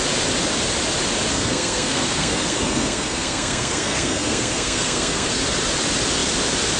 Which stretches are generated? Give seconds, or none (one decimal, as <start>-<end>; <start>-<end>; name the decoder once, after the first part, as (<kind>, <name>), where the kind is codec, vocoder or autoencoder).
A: 1.3-5.4 (codec, SNAC)

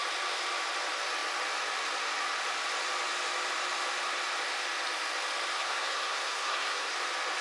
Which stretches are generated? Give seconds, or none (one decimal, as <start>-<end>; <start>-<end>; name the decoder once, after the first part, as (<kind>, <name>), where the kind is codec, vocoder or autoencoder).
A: 5.5-6.9 (codec, SNAC)

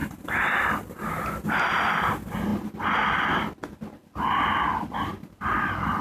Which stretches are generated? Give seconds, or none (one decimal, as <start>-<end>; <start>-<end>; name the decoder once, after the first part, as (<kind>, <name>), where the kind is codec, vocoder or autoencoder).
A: none

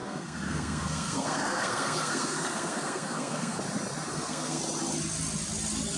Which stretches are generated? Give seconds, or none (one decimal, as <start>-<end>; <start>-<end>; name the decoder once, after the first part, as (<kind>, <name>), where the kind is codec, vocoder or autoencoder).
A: 0.0-3.6 (codec, SNAC); 4.1-4.6

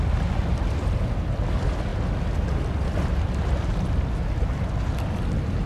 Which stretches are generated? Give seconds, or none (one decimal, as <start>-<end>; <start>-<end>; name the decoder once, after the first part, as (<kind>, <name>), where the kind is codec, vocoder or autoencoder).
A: none

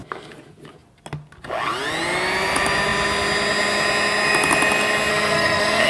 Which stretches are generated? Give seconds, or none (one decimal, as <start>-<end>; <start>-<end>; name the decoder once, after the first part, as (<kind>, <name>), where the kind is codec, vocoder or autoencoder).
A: 5.1-5.9 (codec, SNAC)

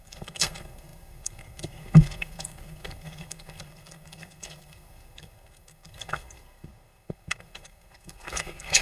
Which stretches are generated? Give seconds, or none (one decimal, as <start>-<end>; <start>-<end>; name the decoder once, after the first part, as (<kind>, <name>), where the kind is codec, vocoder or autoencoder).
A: 0.0-8.8 (codec, SNAC)